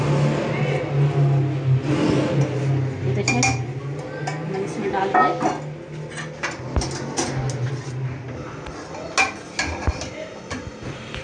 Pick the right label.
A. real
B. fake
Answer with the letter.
A